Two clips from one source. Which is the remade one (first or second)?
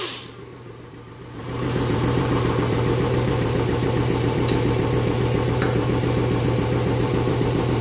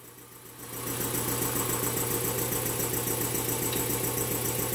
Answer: first